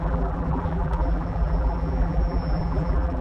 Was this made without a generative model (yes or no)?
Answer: no